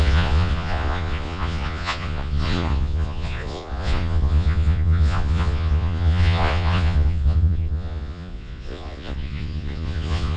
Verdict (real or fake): fake